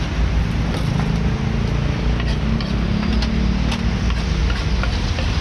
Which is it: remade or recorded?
recorded